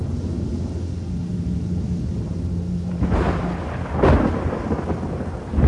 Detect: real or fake real